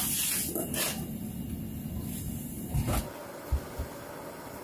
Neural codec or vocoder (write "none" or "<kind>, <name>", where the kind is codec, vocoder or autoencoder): none